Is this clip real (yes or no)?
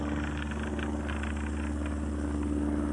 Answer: yes